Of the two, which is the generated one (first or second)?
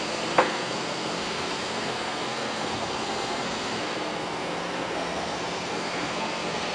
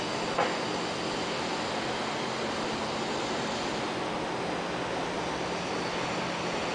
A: first